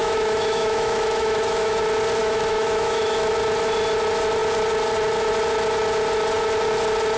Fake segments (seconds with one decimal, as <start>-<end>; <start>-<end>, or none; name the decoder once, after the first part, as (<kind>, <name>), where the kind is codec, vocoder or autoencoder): 0.0-1.8 (autoencoder, DAC-VAE); 2.2-3.3